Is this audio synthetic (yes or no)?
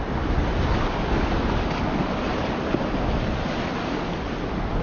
no